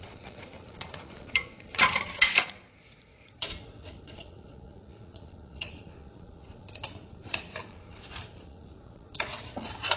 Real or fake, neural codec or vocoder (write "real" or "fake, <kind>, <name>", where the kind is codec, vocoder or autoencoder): fake, vocoder, Vocos